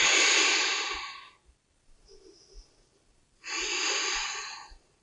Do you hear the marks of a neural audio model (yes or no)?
no